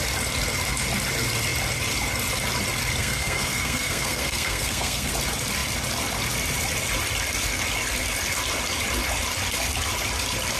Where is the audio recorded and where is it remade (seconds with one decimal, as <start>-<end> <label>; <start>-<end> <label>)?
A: 0.0-3.0 recorded; 3.0-5.1 remade; 5.1-10.6 recorded

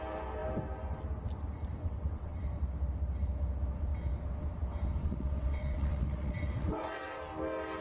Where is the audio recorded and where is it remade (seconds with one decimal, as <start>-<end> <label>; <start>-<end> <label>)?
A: 0.0-1.8 recorded; 1.8-2.5 remade; 2.5-5.0 recorded; 5.0-7.2 remade; 7.2-7.8 recorded

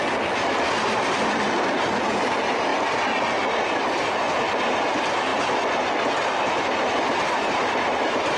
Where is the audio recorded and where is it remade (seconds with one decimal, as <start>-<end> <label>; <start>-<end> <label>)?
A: 0.0-8.4 recorded

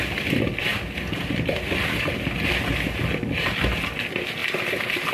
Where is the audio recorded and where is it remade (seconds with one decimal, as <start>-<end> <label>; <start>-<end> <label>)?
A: 0.0-5.1 recorded